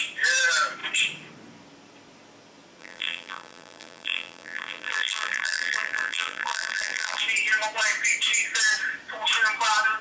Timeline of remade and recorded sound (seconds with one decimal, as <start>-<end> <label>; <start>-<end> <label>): 0.0-2.8 recorded; 2.8-7.2 remade; 7.2-10.0 recorded